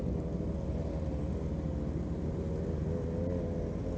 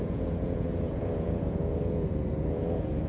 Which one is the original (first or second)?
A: first